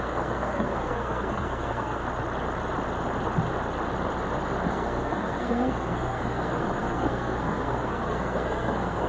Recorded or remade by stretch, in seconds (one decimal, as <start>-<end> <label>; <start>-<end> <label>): 0.0-2.0 remade; 2.0-4.7 recorded; 4.7-9.1 remade